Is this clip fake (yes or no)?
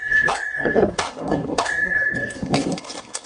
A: yes